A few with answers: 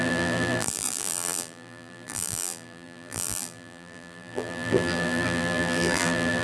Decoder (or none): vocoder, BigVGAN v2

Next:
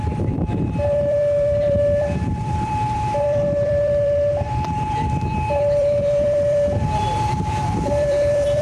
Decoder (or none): vocoder, BigVGAN v2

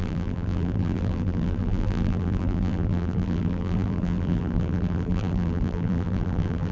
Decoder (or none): vocoder, BigVGAN v2